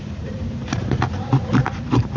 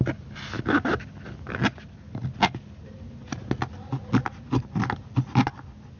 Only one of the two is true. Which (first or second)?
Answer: second